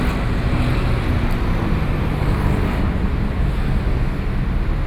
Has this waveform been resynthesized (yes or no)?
no